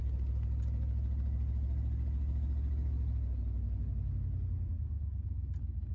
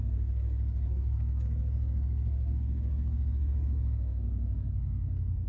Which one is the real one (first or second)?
first